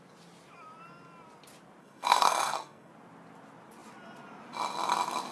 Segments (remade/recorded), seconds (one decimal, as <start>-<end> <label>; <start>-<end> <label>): 0.0-1.8 recorded; 1.8-2.9 remade; 2.9-5.3 recorded